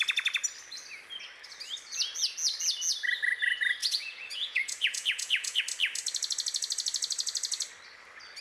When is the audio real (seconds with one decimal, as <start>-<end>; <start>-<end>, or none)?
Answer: 0.0-3.8; 5.6-8.4